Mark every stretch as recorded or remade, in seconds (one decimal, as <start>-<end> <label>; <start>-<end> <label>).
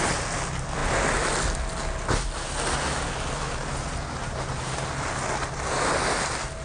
0.0-6.6 recorded